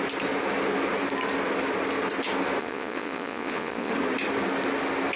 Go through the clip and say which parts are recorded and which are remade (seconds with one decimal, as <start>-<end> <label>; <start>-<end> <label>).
0.0-2.6 recorded; 2.6-3.9 remade; 3.9-5.2 recorded